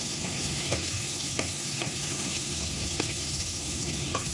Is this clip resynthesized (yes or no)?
yes